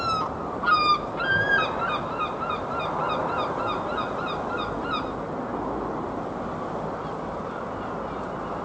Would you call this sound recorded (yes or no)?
yes